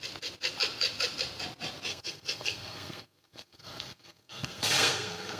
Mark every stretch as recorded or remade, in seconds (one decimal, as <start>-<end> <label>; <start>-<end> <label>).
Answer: 0.0-1.9 recorded; 1.9-5.4 remade